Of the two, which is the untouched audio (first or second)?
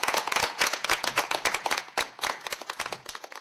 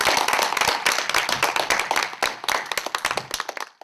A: second